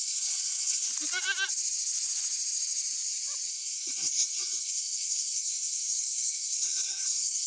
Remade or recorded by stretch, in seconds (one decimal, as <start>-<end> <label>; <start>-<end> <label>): 0.0-0.9 remade; 0.9-3.5 recorded; 3.5-7.5 remade